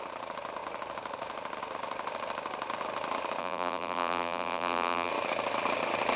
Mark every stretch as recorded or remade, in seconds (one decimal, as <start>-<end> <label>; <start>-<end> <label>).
0.0-3.4 recorded; 3.4-5.1 remade; 5.1-6.2 recorded